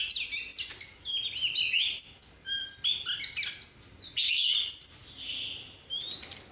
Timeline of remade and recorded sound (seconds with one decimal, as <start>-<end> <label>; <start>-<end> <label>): 0.0-6.5 recorded

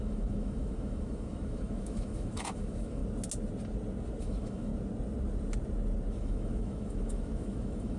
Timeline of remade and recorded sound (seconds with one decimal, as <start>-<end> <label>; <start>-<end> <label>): 0.0-3.0 remade; 3.0-4.2 recorded; 4.2-4.7 remade; 4.7-6.1 recorded; 6.1-8.0 remade

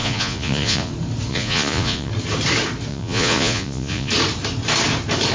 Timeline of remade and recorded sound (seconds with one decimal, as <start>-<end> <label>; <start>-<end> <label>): 0.0-0.9 remade; 0.9-1.3 recorded; 1.3-2.1 remade; 2.1-2.9 recorded; 2.9-4.1 remade; 4.1-5.3 recorded